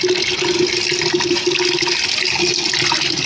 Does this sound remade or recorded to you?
recorded